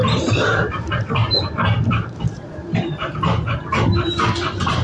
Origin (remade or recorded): remade